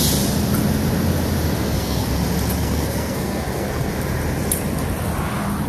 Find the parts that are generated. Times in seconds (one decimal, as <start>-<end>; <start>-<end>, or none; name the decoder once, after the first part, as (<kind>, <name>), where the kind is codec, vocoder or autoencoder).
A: 1.6-2.1 (codec, SNAC); 2.6-3.9